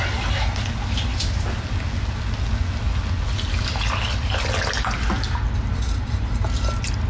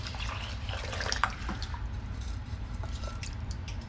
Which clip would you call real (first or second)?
first